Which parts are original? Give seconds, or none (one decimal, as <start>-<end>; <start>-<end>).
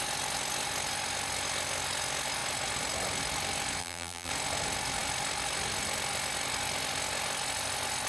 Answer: 0.0-3.8; 4.3-8.1